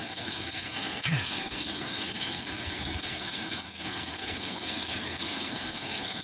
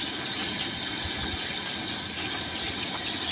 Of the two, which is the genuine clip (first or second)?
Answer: second